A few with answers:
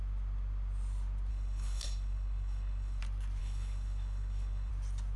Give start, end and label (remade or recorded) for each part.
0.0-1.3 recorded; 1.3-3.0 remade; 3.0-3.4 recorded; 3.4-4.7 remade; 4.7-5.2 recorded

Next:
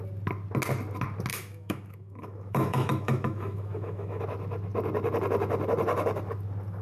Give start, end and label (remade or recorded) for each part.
0.0-1.3 recorded; 1.3-4.2 remade; 4.2-6.8 recorded